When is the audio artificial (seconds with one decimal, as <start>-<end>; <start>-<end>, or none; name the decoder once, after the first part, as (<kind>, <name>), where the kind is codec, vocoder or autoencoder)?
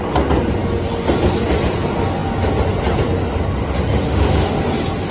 3.9-4.6 (autoencoder, DAC-VAE)